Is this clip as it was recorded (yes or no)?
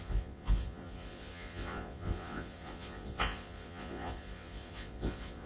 no